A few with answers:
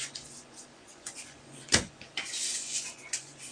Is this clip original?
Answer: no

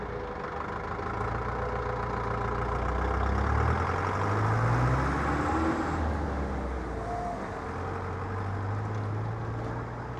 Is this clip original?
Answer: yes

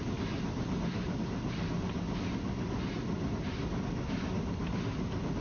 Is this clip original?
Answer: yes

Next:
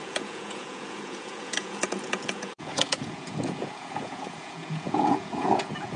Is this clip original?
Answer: no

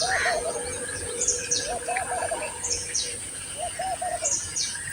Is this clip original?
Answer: no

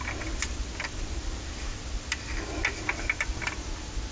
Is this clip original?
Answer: yes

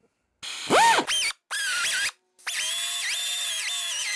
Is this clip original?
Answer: yes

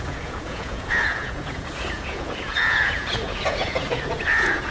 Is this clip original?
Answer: no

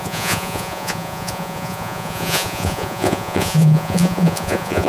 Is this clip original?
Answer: no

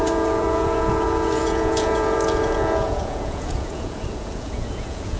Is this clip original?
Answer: no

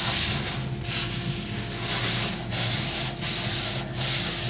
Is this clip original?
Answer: yes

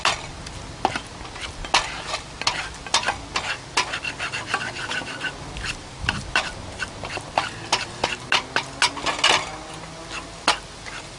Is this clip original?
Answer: yes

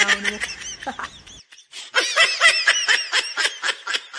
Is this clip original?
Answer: yes